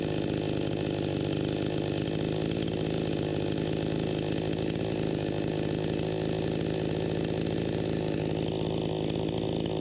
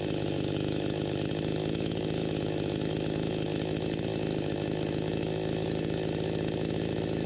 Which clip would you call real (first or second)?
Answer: first